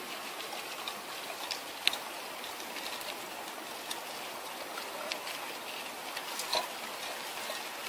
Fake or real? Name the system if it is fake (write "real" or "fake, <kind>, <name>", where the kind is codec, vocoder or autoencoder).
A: real